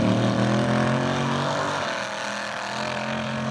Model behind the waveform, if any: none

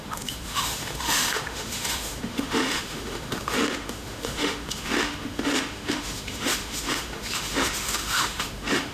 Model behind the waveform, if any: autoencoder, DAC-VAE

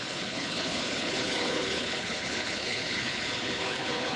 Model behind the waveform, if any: codec, HILCodec